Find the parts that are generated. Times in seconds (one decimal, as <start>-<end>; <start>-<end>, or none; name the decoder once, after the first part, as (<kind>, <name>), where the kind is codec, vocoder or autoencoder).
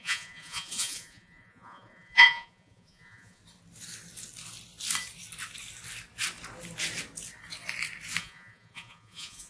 0.0-3.4 (vocoder, Vocos); 8.2-9.5